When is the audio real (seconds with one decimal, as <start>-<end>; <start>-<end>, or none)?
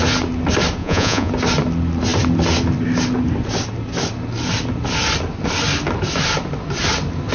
0.0-0.8; 1.3-7.3